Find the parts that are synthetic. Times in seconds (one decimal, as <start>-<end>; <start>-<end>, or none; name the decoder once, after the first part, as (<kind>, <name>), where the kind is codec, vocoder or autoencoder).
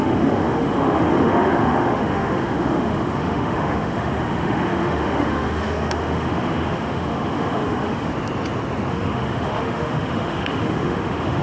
0.0-8.1 (autoencoder, DAC-VAE); 8.9-11.4